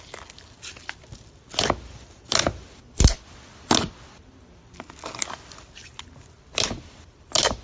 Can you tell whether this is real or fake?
real